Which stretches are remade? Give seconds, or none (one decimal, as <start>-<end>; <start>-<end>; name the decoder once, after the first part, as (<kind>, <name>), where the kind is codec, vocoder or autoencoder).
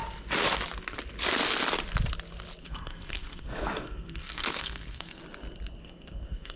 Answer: 2.6-5.2 (codec, SNAC); 5.8-6.6